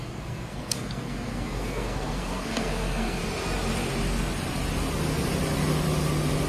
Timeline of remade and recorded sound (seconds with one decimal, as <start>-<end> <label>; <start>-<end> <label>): 0.0-3.2 remade; 3.2-6.5 recorded